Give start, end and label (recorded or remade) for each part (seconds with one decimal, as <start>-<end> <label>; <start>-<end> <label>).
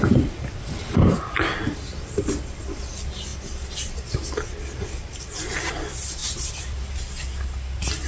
0.0-6.2 recorded; 6.2-6.9 remade; 6.9-8.1 recorded